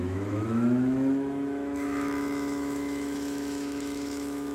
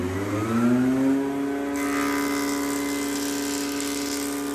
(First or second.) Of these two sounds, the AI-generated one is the first